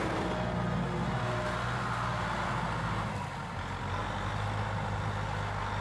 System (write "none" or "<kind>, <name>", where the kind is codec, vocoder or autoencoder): none